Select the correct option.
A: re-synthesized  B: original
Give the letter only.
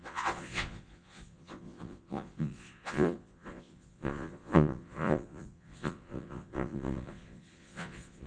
A